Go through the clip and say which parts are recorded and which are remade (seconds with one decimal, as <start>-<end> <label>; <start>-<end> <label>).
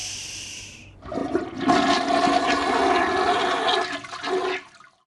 0.0-5.1 recorded